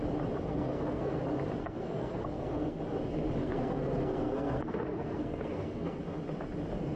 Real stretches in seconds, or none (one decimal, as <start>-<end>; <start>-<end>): 0.0-0.5; 1.2-1.6; 2.8-3.4; 6.0-7.0